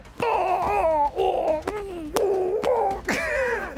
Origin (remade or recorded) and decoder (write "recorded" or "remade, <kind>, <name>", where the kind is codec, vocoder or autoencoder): recorded